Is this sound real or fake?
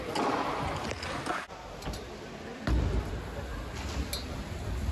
real